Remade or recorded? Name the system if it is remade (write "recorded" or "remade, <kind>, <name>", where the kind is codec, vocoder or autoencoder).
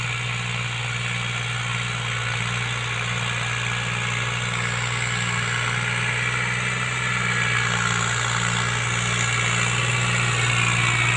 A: recorded